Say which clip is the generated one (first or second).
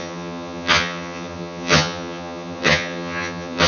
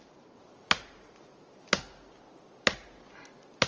first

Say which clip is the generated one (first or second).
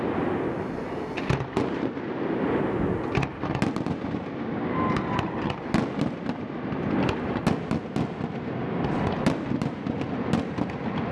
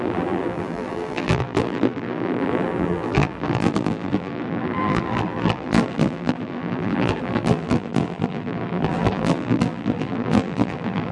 second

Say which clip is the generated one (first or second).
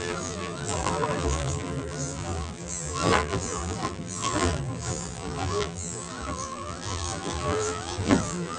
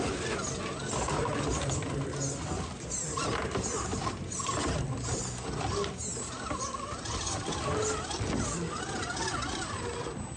first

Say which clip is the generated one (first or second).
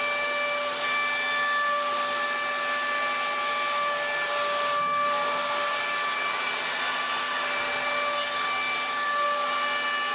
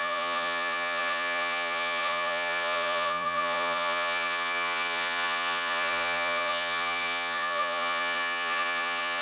second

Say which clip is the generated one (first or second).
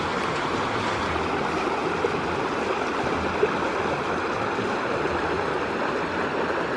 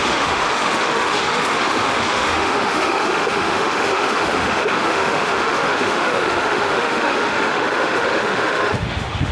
second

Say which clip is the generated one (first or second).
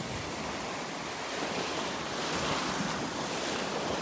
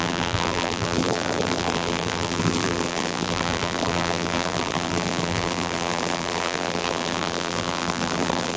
second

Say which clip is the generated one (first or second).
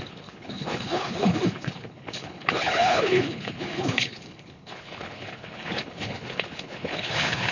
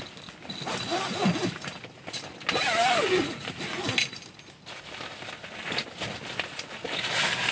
first